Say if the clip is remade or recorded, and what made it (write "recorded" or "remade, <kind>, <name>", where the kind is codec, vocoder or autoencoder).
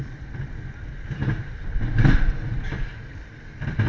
recorded